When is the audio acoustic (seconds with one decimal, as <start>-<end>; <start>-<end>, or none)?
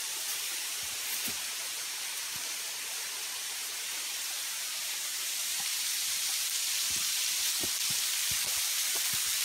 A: 0.0-3.4; 7.5-9.4